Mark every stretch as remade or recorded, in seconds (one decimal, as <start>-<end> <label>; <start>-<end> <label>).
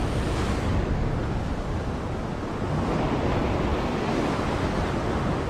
0.0-5.5 recorded